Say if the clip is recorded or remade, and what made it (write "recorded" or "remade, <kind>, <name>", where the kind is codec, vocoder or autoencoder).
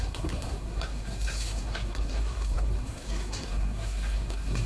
remade, codec, SNAC